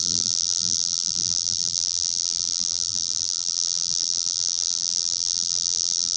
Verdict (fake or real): fake